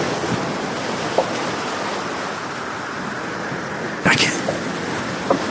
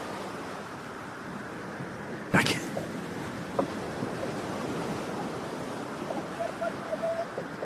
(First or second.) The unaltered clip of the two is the first